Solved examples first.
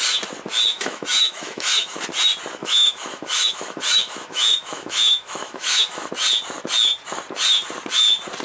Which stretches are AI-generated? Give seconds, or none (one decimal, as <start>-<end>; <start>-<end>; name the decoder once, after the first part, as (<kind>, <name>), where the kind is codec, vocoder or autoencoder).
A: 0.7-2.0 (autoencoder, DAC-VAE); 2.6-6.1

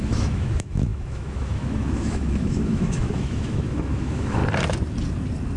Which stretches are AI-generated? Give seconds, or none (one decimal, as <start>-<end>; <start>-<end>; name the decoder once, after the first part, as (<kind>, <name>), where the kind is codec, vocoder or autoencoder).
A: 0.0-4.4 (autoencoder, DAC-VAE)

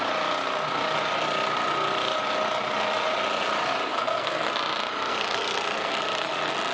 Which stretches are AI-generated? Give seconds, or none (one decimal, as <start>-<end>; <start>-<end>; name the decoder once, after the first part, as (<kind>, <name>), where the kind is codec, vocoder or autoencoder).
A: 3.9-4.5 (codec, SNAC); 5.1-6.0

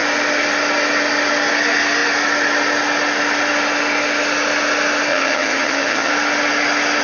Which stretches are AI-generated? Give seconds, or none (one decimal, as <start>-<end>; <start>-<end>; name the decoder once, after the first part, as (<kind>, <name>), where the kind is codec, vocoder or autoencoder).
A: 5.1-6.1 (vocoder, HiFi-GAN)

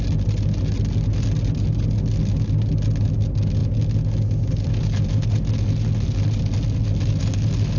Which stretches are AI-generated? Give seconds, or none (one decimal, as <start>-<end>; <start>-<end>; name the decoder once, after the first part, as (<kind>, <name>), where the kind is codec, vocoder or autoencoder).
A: none